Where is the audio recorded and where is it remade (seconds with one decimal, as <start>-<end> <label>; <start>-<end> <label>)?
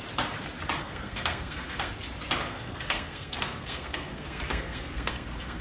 0.0-0.8 recorded; 0.8-1.9 remade; 1.9-2.4 recorded; 2.4-5.6 remade